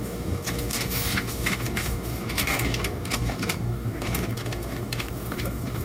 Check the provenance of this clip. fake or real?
fake